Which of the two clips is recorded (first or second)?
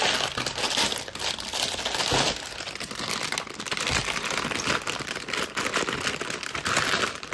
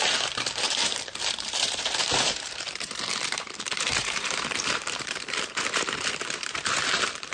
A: first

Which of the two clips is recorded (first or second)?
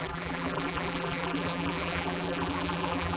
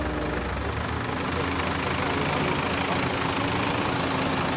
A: second